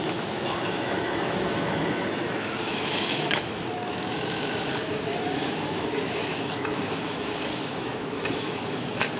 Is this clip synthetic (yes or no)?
yes